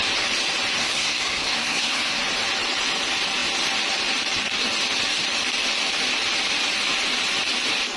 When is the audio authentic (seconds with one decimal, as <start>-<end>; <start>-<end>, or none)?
0.0-0.8; 2.2-8.0